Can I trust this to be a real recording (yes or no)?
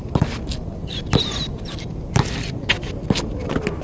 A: yes